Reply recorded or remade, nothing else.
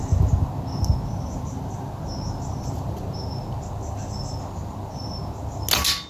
recorded